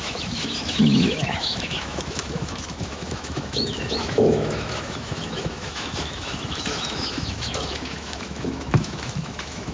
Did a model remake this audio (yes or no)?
yes